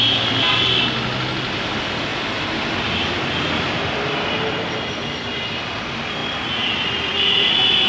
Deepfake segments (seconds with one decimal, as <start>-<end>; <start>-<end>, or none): none

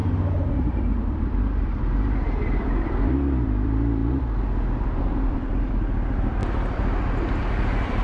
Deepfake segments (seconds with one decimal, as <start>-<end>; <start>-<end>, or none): 0.5-4.0; 4.8-6.4; 7.4-8.0

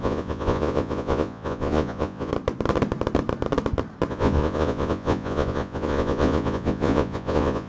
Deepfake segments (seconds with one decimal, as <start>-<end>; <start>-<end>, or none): 0.0-2.3; 4.1-7.7

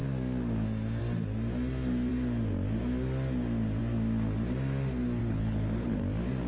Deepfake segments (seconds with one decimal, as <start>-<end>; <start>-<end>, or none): 5.2-6.0